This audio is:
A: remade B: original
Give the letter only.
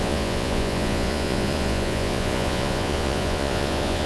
A